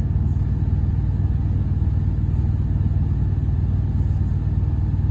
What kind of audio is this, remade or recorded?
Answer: recorded